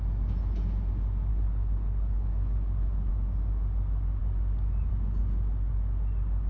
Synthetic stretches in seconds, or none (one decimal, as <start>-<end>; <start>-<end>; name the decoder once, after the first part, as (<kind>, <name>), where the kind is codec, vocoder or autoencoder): 1.3-3.1 (codec, HILCodec)